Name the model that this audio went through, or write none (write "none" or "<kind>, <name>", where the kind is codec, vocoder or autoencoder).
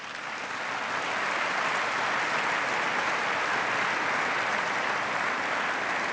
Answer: none